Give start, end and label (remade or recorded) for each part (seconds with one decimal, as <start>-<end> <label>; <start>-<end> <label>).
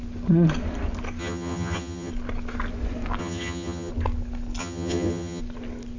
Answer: 0.0-1.2 recorded; 1.2-2.1 remade; 2.1-3.2 recorded; 3.2-3.9 remade; 3.9-4.6 recorded; 4.6-5.4 remade; 5.4-6.0 recorded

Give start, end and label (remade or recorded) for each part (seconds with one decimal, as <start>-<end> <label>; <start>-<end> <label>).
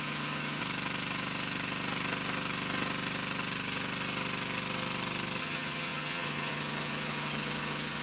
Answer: 0.0-0.6 remade; 0.6-5.4 recorded; 5.4-8.0 remade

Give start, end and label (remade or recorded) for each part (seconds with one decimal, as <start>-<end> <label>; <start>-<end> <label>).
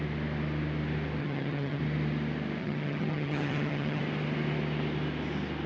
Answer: 0.0-1.2 recorded; 1.2-1.8 remade; 1.8-2.6 recorded; 2.6-4.0 remade; 4.0-5.7 recorded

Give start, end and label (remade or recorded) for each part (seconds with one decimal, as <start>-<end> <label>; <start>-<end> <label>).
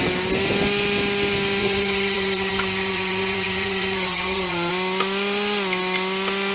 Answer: 0.0-1.6 recorded; 1.6-4.7 remade; 4.7-6.5 recorded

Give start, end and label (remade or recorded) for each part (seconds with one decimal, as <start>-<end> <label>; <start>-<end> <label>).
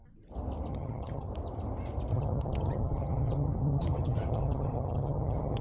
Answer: 0.0-0.7 recorded; 0.7-1.3 remade; 1.3-2.1 recorded; 2.1-5.6 remade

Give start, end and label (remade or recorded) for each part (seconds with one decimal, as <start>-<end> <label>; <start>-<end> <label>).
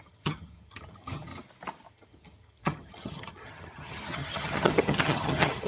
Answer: 0.0-1.3 remade; 1.3-1.9 recorded; 1.9-5.7 remade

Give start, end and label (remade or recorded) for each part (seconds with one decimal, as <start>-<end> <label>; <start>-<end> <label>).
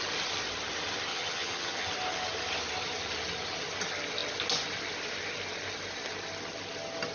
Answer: 0.0-1.1 recorded; 1.1-1.9 remade; 1.9-7.1 recorded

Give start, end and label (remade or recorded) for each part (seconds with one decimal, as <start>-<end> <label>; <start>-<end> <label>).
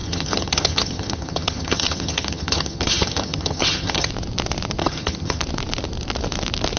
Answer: 0.0-4.1 remade; 4.1-4.8 recorded; 4.8-5.4 remade; 5.4-6.8 recorded